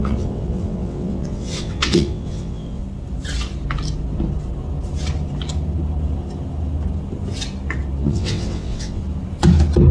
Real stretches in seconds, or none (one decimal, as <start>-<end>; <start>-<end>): 2.8-8.0; 9.0-9.9